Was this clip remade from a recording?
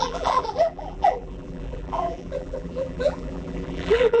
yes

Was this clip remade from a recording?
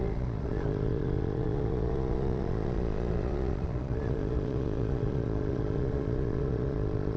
yes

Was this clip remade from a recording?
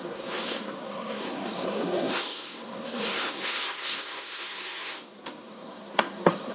yes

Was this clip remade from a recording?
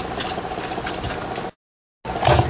no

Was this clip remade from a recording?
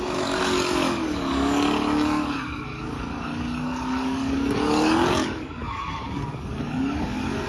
yes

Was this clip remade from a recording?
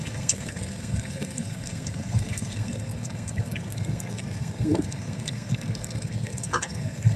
yes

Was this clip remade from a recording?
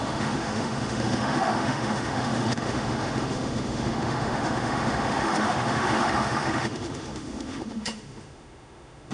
yes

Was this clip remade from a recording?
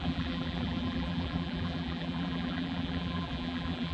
yes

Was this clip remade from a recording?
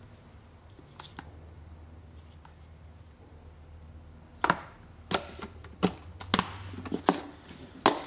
no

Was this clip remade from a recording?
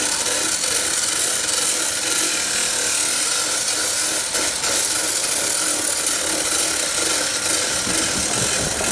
no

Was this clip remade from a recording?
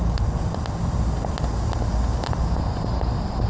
no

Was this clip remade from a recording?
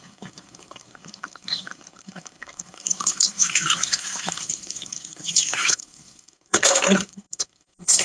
yes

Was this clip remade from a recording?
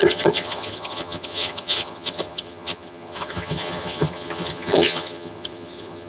yes